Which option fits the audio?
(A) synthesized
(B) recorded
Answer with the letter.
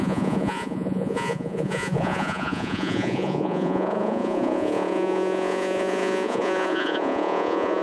A